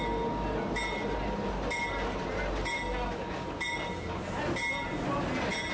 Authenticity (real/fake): real